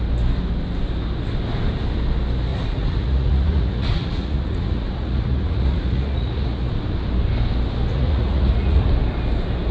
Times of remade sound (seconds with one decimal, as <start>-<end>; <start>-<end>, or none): 2.5-6.7; 7.9-8.9